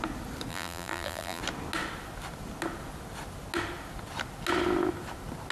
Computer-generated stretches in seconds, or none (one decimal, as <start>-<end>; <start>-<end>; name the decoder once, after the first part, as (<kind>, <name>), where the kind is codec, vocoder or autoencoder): 0.5-1.4 (vocoder, BigVGAN v2)